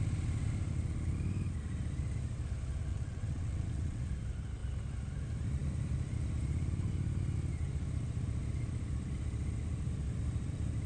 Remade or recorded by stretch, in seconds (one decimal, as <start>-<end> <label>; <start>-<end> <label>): 0.0-2.9 recorded; 2.9-4.0 remade; 4.0-10.9 recorded